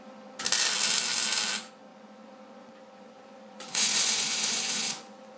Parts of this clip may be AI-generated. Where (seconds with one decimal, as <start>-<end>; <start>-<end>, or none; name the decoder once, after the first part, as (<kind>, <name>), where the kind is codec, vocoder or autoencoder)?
1.9-5.4 (vocoder, Vocos)